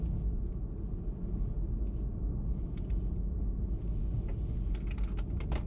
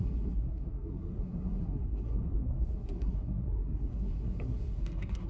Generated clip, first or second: second